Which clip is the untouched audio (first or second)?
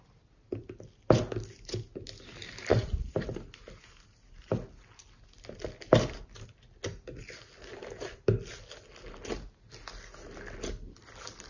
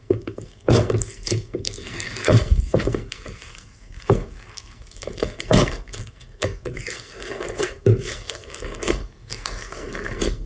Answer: first